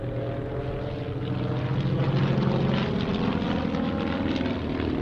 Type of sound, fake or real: real